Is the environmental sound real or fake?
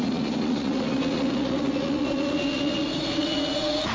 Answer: fake